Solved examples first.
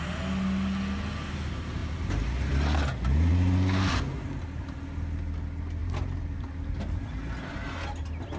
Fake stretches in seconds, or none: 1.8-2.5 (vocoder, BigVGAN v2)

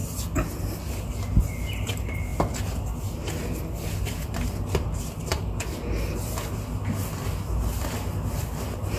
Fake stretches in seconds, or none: none

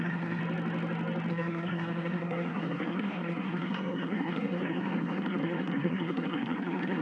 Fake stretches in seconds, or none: 0.0-0.4 (codec, SNAC); 1.3-7.0

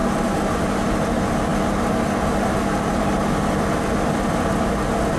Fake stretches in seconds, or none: 0.0-0.8 (vocoder, BigVGAN v2); 1.5-4.6